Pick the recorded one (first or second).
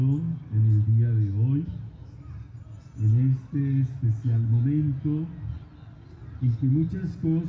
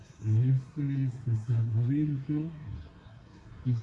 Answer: first